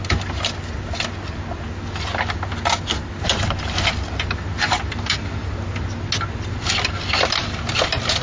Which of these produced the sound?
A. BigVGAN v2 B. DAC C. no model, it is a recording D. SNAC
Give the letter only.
C